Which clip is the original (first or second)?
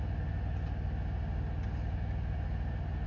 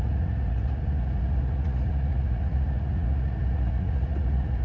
first